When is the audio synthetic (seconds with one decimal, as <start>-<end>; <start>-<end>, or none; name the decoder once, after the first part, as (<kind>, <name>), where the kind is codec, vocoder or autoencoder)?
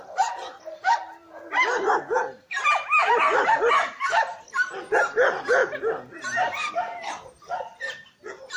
none